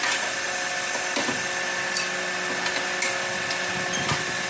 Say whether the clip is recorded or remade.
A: recorded